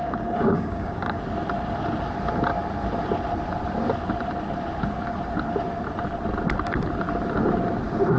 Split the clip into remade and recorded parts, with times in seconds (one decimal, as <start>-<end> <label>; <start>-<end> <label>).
0.0-1.2 remade; 1.2-8.2 recorded